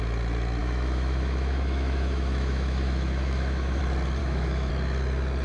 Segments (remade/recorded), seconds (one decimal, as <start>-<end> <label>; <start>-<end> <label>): 0.0-0.6 recorded; 0.6-3.8 remade; 3.8-4.2 recorded; 4.2-4.7 remade; 4.7-5.4 recorded